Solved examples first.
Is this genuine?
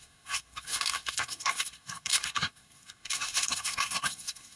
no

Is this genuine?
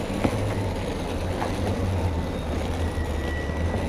yes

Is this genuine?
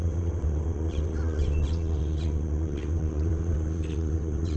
no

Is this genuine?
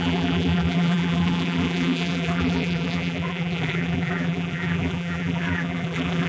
no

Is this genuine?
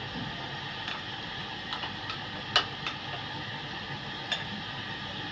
yes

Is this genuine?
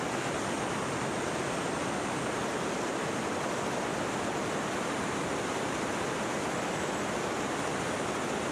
yes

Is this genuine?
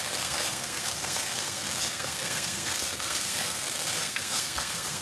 no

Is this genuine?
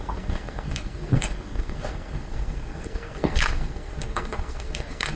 no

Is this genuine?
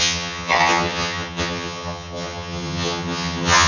no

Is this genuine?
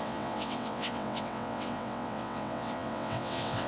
no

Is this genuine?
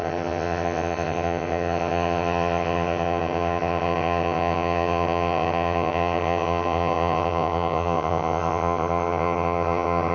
no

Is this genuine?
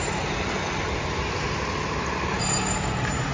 yes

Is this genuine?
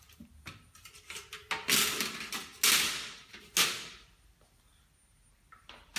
yes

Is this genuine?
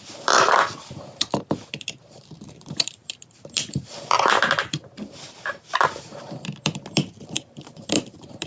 no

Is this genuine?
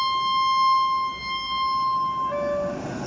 yes